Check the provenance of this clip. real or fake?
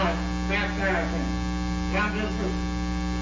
real